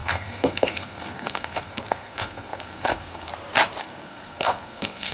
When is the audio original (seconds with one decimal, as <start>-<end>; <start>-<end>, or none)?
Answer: 3.3-3.8